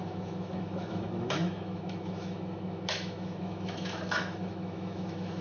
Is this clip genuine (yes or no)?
no